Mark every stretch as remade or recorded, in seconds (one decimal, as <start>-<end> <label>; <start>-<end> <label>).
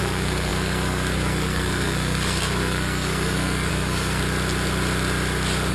0.0-4.2 remade; 4.2-5.7 recorded